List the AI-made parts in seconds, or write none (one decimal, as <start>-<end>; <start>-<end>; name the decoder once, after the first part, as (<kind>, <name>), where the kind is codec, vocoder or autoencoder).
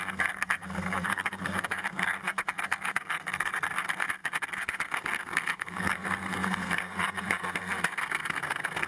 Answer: 0.0-8.9 (codec, SNAC)